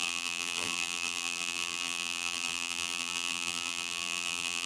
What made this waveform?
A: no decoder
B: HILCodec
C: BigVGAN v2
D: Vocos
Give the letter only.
C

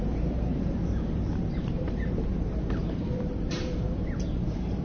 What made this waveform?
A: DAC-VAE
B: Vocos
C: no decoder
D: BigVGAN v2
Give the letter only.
D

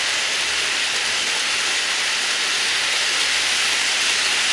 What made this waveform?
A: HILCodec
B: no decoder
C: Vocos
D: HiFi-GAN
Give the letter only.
B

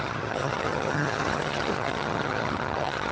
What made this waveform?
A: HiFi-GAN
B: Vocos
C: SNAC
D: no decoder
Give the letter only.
A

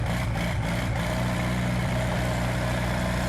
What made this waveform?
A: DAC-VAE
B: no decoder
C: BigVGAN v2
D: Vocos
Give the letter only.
B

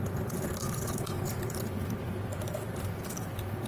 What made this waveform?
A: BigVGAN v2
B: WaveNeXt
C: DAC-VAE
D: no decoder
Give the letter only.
D